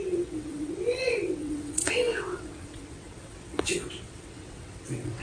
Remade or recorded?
remade